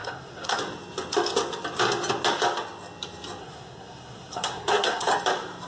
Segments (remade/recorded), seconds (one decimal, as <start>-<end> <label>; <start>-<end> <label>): 0.0-0.6 remade; 0.6-3.4 recorded; 3.4-5.1 remade; 5.1-5.7 recorded